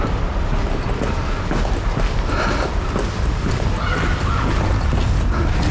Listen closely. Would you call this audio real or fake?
real